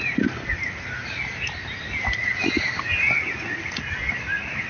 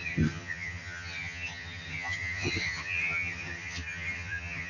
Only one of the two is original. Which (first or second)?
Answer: first